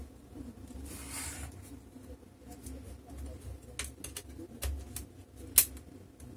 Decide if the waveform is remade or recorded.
recorded